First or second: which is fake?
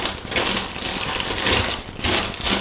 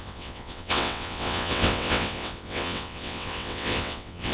second